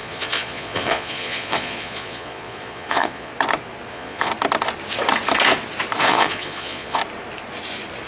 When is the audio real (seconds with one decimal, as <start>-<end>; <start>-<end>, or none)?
3.3-3.9; 4.3-6.0; 7.0-8.1